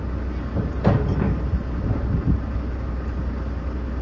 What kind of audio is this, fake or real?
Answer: real